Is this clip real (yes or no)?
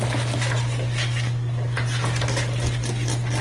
yes